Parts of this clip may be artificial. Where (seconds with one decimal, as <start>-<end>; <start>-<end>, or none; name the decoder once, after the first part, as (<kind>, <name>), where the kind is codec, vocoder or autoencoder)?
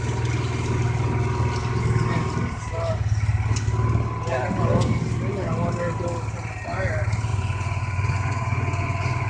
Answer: 7.3-9.3 (vocoder, Vocos)